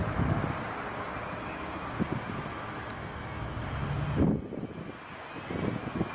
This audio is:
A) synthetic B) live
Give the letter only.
B